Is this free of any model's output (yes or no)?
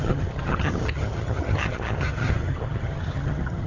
no